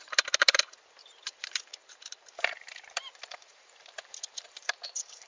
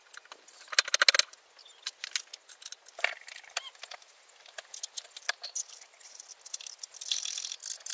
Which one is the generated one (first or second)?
first